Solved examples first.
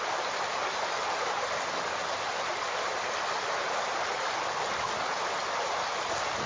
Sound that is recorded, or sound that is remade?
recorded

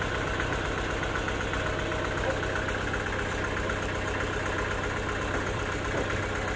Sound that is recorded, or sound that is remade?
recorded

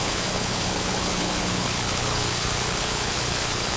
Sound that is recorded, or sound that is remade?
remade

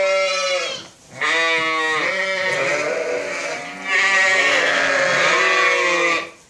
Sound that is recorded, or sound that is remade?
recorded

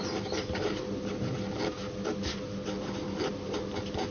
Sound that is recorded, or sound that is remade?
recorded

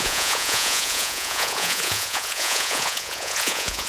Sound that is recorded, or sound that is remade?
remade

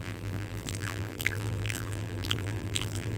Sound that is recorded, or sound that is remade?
remade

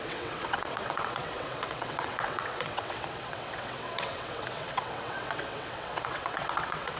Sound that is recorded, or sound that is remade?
remade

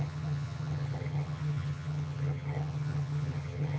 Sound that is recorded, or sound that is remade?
remade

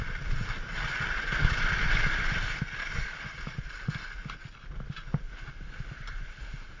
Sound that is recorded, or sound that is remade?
recorded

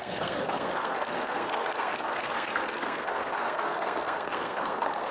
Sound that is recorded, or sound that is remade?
remade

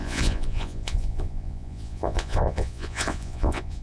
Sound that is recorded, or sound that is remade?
remade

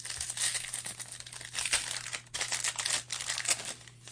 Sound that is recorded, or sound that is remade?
recorded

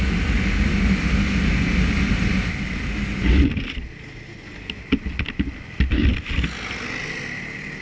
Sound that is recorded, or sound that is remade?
recorded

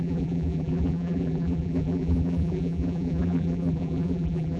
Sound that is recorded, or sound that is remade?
remade